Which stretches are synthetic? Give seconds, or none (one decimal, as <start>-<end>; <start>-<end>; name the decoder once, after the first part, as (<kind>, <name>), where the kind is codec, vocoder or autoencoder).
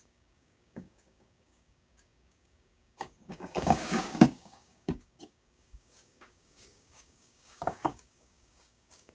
0.0-9.1 (codec, DAC)